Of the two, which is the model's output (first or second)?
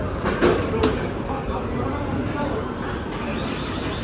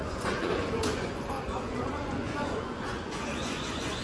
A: second